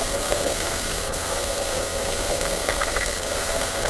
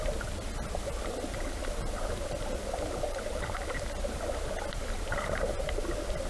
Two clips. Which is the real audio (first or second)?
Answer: second